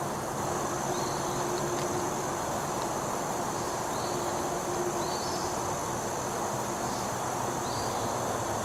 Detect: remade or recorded recorded